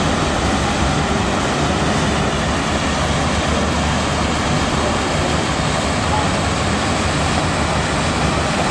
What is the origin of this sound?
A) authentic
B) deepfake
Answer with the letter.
A